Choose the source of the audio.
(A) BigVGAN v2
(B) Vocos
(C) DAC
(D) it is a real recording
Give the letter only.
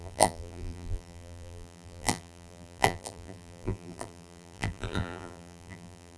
A